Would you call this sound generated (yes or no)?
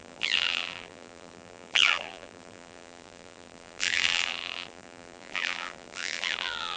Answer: yes